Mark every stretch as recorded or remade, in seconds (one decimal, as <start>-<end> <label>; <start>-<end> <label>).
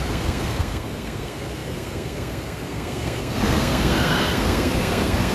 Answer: 0.0-5.3 remade